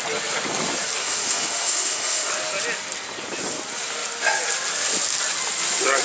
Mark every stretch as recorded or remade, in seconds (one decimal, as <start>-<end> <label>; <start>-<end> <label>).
0.0-1.0 recorded; 1.0-2.3 remade; 2.3-6.0 recorded